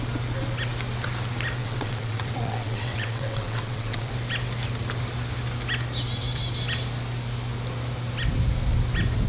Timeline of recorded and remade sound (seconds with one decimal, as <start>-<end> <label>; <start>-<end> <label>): 0.0-1.6 recorded; 1.6-4.1 remade; 4.1-9.3 recorded

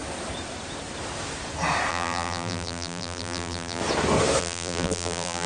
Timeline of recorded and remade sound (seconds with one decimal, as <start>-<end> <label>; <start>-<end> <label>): 0.0-1.9 recorded; 1.9-3.8 remade; 3.8-4.4 recorded; 4.4-5.5 remade